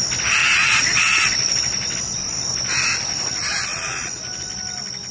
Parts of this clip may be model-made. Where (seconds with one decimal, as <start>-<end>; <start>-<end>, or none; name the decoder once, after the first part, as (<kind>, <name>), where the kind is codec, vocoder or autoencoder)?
0.4-1.6 (vocoder, Vocos); 3.7-4.2